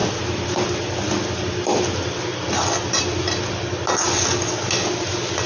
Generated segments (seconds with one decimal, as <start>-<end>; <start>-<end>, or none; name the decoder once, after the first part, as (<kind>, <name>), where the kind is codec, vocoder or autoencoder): none